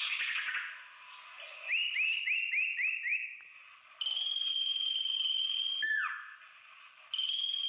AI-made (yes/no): no